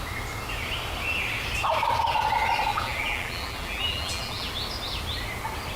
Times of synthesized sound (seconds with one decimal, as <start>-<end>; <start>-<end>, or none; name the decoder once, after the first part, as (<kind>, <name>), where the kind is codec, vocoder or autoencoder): 2.7-4.5 (vocoder, BigVGAN v2)